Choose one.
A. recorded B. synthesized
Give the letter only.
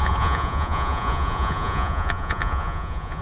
B